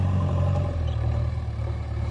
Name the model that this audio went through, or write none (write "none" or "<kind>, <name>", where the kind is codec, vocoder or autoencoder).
vocoder, BigVGAN v2